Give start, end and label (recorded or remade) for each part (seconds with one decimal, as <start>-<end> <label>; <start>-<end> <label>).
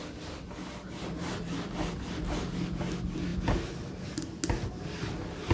0.0-5.5 recorded